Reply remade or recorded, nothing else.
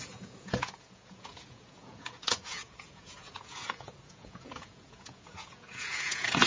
remade